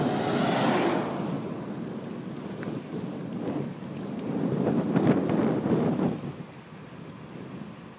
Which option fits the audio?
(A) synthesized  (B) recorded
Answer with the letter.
B